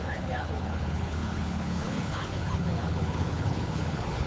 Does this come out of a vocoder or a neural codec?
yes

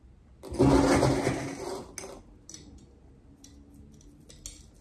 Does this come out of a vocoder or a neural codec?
no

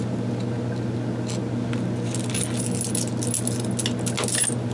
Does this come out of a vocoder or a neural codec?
no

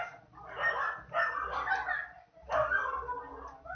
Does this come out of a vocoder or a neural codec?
no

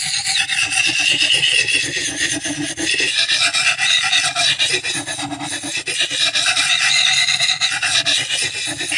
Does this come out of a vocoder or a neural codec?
no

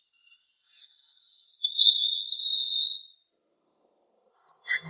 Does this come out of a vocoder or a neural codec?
no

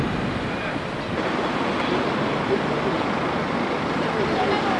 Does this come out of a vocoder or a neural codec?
no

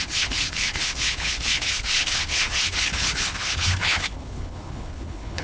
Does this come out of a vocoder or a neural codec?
yes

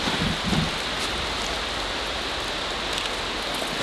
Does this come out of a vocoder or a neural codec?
no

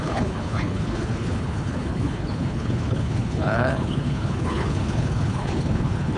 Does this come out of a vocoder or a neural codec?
yes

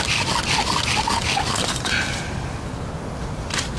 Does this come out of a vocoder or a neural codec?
no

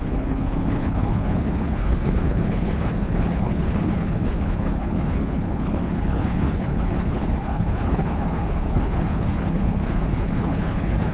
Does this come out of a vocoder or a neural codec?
yes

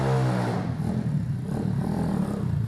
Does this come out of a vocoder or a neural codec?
no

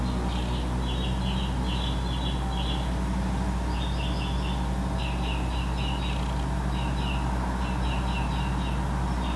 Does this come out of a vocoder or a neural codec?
no